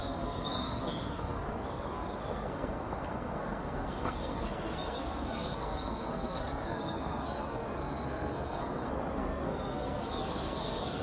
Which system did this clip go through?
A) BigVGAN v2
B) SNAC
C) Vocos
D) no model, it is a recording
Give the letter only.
B